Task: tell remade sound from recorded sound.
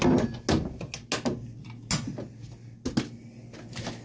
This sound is recorded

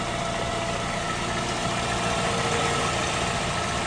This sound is recorded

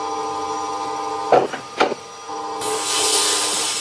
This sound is recorded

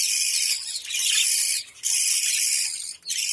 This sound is recorded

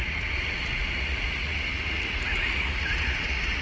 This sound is remade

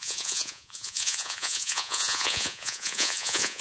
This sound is remade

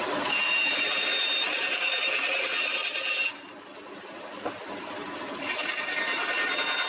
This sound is recorded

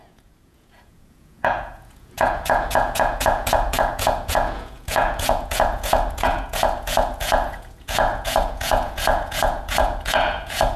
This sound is remade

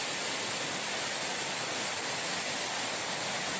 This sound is recorded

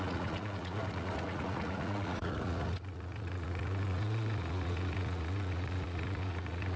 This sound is remade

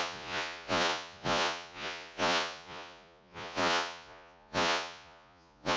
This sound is remade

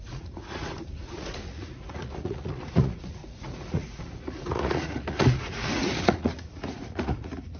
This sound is remade